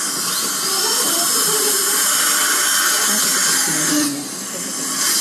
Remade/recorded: recorded